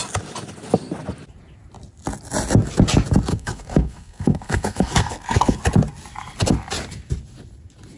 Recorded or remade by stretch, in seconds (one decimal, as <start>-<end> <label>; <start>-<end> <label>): 0.0-3.3 recorded; 3.3-5.6 remade; 5.6-8.0 recorded